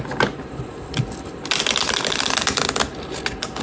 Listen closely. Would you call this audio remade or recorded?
recorded